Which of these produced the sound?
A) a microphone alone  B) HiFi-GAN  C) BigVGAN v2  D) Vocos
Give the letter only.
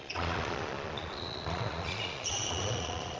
D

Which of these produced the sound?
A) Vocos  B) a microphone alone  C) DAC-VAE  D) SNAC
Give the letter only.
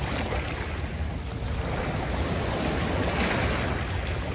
B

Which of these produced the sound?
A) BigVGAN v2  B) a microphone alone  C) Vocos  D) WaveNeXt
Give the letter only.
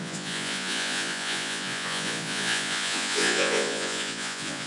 C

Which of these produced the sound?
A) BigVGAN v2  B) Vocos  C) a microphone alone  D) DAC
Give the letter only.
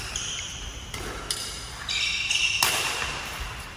C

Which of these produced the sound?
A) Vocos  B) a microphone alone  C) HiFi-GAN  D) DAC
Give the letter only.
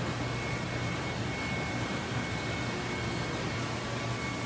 B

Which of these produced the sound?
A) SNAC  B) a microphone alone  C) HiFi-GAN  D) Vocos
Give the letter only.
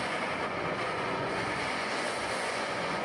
D